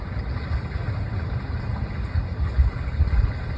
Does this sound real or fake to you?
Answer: real